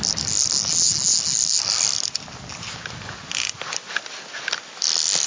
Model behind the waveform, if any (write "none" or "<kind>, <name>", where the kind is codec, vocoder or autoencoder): none